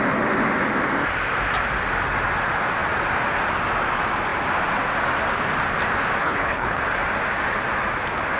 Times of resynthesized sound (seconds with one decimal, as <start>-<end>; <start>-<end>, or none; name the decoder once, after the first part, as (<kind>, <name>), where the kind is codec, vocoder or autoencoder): 6.2-6.8 (codec, HILCodec)